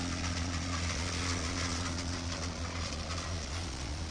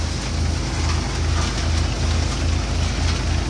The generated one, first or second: first